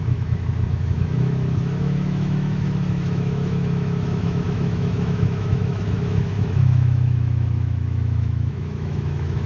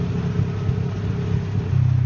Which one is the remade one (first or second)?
first